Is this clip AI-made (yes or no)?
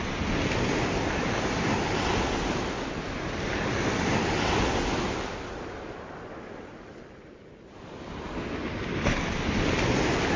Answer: no